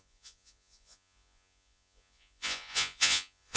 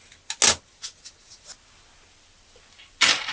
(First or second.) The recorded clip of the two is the second